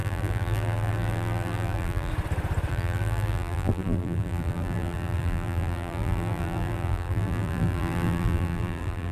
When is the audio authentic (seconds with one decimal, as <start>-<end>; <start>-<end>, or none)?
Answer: 2.1-2.7